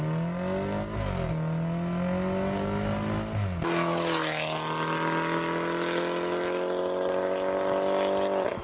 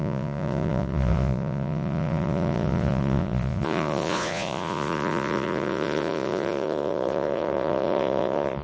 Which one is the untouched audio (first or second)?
first